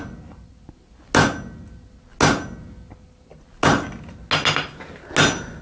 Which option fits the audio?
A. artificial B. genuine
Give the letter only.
B